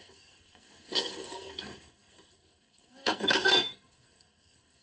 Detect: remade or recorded remade